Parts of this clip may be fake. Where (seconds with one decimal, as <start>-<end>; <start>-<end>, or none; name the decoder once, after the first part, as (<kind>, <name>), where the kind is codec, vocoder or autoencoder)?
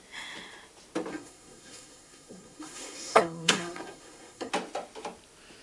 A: 1.1-4.5 (codec, SNAC)